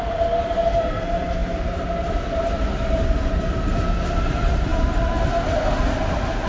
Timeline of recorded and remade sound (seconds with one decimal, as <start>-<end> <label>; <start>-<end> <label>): 0.0-6.5 recorded